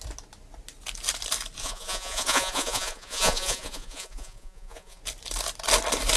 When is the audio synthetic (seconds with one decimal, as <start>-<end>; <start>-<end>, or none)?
1.6-5.0